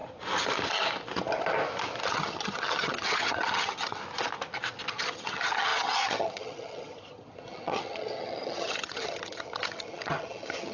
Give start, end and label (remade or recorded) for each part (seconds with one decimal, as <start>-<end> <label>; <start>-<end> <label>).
0.0-2.1 recorded; 2.1-4.0 remade; 4.0-4.9 recorded; 4.9-10.7 remade